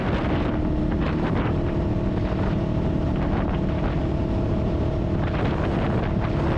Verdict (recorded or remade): recorded